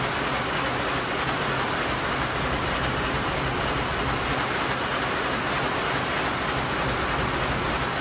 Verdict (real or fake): real